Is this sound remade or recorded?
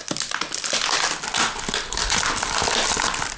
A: recorded